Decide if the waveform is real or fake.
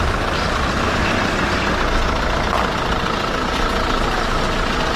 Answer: real